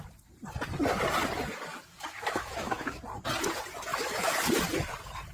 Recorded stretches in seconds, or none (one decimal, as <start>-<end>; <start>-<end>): 0.0-1.7; 3.0-3.9; 4.4-5.3